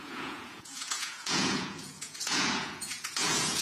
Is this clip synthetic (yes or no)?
yes